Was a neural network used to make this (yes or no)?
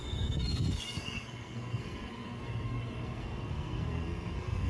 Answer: yes